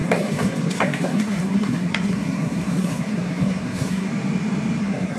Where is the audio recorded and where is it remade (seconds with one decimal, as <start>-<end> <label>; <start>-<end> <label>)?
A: 0.0-4.1 remade; 4.1-4.8 recorded; 4.8-5.2 remade

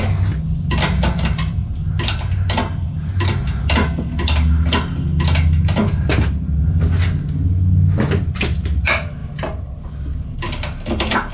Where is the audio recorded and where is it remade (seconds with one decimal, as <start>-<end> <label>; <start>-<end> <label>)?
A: 0.0-11.3 recorded

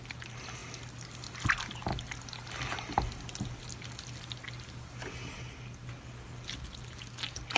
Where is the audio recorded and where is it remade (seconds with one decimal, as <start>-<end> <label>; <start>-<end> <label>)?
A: 0.0-7.6 recorded

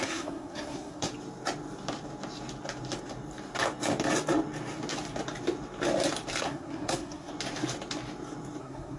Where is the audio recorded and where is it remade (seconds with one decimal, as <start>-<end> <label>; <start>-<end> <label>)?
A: 0.0-1.1 remade; 1.1-6.4 recorded; 6.4-7.3 remade; 7.3-8.6 recorded; 8.6-9.0 remade

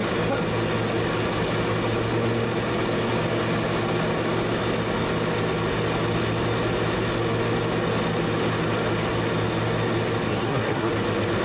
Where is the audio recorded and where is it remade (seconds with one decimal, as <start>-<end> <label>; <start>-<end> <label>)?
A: 0.0-10.3 recorded; 10.3-10.9 remade; 10.9-11.4 recorded